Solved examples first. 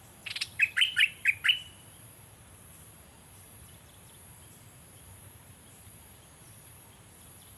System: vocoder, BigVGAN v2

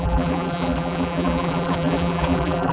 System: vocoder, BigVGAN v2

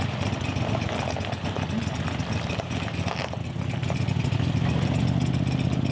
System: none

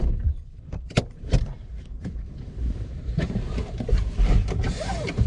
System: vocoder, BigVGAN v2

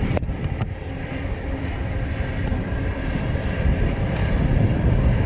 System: vocoder, BigVGAN v2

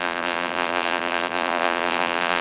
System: vocoder, BigVGAN v2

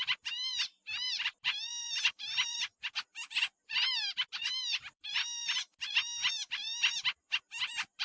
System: vocoder, BigVGAN v2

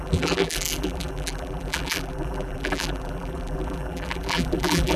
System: vocoder, BigVGAN v2